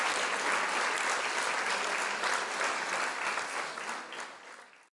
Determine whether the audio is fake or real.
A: real